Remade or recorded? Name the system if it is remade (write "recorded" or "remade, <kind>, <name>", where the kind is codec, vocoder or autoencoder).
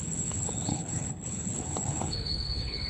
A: remade, codec, HILCodec